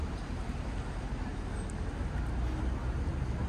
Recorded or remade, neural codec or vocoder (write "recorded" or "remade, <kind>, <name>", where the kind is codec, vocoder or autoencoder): recorded